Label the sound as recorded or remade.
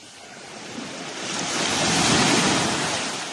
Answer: recorded